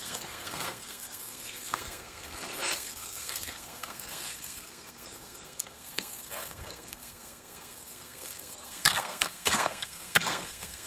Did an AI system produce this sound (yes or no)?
yes